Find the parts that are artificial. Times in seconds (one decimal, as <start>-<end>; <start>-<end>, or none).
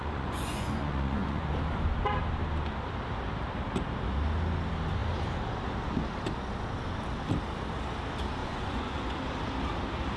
0.0-1.5; 8.4-9.2